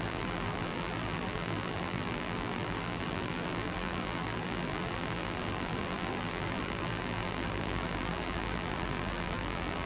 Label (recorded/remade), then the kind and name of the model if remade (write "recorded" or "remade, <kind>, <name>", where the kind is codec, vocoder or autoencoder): remade, vocoder, BigVGAN v2